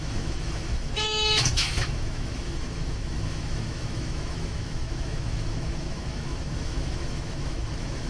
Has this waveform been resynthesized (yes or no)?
yes